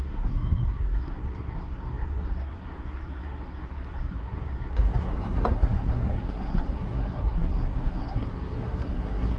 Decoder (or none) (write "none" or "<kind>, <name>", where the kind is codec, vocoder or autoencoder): codec, SNAC